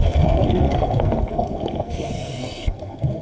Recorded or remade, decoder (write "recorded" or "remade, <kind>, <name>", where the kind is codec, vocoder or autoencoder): remade, codec, SNAC